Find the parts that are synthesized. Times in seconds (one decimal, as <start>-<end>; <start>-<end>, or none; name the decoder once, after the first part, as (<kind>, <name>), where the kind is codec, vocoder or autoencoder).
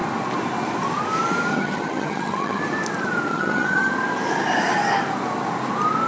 1.5-2.6 (vocoder, HiFi-GAN); 3.3-3.9